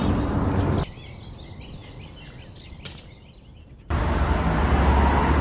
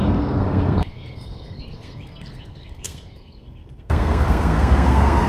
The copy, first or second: second